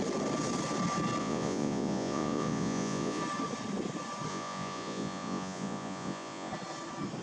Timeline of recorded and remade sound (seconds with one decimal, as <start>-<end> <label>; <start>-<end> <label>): 0.0-1.2 recorded; 1.2-3.2 remade; 3.2-4.3 recorded; 4.3-6.5 remade; 6.5-7.2 recorded